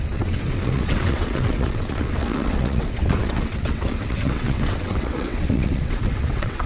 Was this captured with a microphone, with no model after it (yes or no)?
no